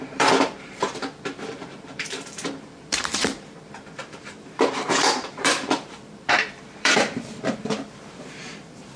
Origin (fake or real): fake